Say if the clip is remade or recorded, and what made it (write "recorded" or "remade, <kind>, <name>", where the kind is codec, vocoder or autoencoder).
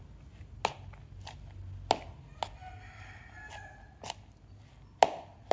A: recorded